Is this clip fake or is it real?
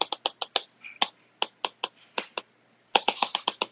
real